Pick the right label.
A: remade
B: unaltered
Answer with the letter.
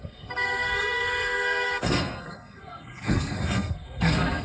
A